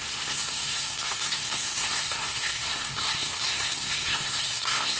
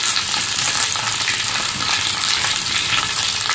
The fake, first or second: first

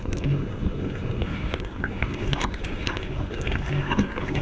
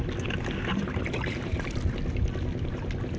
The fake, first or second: first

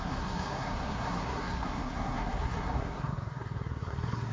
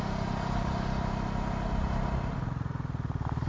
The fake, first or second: first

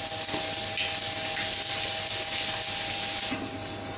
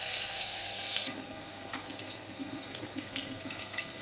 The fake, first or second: second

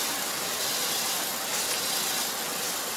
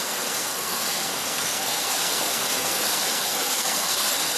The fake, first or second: second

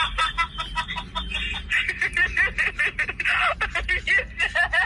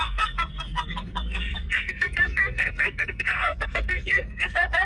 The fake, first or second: second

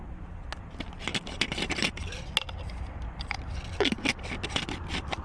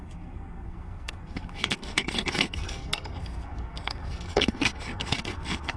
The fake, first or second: second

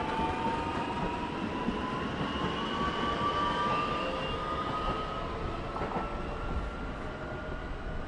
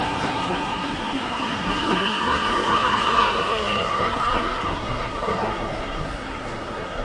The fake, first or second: second